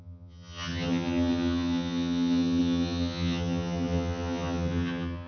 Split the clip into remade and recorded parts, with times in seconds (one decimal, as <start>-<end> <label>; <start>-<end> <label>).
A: 0.0-5.3 remade